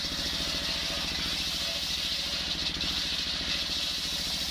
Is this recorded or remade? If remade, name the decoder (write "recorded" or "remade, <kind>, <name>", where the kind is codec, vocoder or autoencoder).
recorded